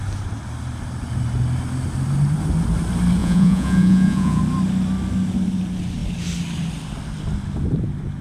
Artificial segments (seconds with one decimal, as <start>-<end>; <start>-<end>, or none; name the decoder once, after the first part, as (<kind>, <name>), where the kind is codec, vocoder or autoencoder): 3.2-4.4 (vocoder, Vocos)